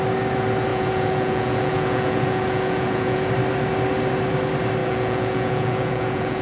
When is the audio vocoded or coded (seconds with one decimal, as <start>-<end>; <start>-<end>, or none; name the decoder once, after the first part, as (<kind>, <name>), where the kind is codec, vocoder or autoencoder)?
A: 0.7-3.3 (vocoder, Vocos); 4.8-6.4